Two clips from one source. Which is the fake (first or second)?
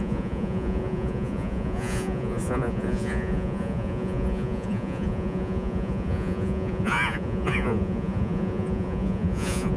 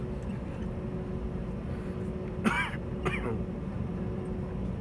first